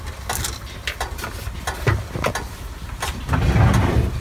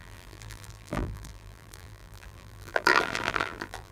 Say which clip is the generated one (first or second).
second